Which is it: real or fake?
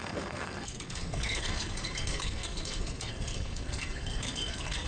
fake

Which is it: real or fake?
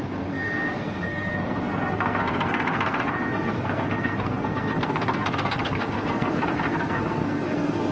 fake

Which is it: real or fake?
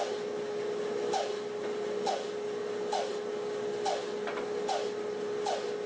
real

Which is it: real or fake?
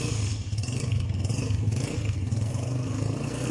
fake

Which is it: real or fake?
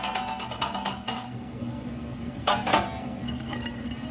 fake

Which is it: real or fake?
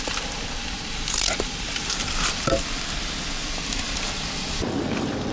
real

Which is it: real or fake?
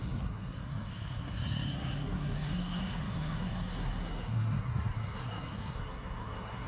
fake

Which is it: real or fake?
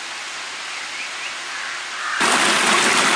real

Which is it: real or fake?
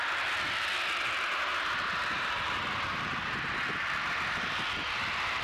real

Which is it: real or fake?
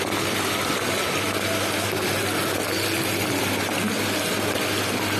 real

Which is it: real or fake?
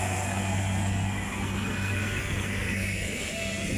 fake